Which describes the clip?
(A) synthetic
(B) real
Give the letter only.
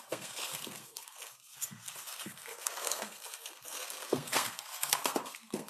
A